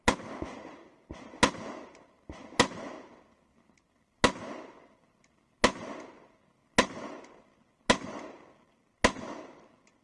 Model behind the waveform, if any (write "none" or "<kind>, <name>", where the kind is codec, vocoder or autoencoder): none